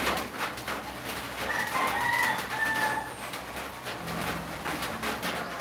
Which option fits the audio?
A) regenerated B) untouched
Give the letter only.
B